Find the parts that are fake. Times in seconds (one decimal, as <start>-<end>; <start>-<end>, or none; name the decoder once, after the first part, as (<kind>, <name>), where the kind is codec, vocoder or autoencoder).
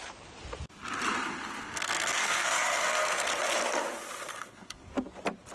1.2-3.3 (codec, SNAC); 4.3-4.9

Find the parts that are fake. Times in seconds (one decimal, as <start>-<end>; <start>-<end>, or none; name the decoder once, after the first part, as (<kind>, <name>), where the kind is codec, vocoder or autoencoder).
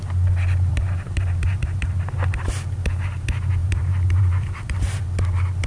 0.7-2.0 (vocoder, BigVGAN v2); 3.6-5.0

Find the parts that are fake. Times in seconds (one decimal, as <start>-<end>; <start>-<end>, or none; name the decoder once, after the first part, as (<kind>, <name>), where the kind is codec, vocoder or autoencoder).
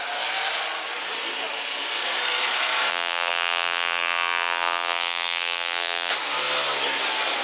2.9-6.1 (vocoder, BigVGAN v2)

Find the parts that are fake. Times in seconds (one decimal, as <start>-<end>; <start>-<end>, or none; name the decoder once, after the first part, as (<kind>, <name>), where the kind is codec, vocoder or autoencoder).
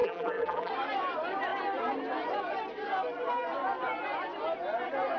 0.0-0.7 (vocoder, BigVGAN v2)